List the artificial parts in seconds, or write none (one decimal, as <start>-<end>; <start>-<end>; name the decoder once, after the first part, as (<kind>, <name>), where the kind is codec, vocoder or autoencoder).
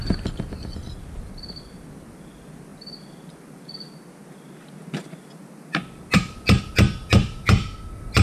none